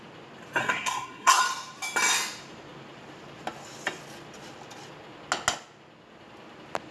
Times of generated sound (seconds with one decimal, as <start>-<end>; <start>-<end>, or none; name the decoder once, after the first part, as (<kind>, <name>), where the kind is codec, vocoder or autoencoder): 0.6-1.4 (codec, SNAC)